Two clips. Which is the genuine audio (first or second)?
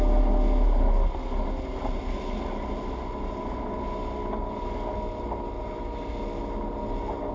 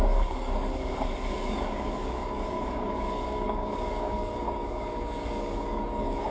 first